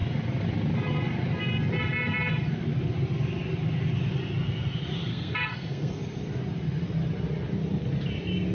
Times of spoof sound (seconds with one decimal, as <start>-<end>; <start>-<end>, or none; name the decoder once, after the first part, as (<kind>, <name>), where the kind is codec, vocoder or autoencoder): 5.1-6.0 (codec, SNAC)